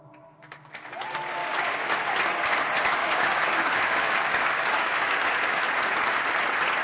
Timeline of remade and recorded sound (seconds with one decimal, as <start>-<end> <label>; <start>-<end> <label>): 0.0-1.4 recorded; 1.4-2.0 remade; 2.0-3.0 recorded; 3.0-5.6 remade; 5.6-6.8 recorded